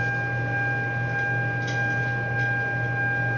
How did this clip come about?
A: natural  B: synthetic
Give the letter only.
A